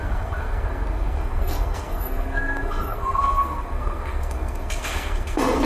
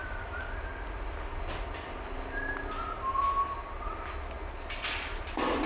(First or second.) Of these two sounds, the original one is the second